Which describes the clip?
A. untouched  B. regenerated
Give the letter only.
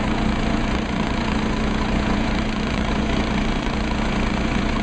B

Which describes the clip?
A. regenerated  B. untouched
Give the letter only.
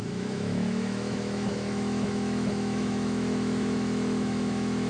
A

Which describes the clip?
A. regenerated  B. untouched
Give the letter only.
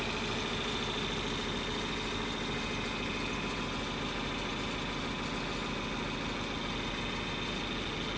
B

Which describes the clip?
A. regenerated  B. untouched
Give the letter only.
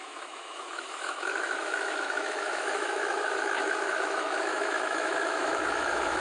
A